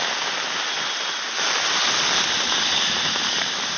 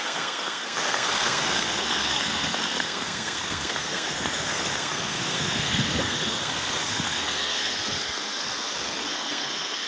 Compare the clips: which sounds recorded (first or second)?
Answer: first